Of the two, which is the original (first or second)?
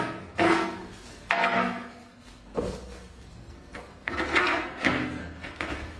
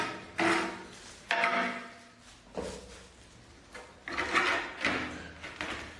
second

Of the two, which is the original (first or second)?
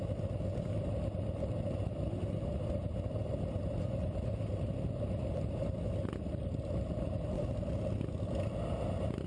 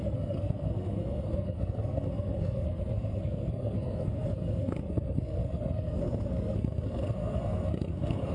first